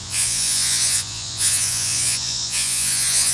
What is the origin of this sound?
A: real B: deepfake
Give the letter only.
B